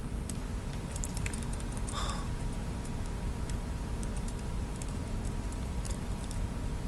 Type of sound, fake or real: fake